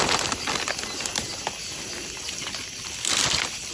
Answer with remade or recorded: recorded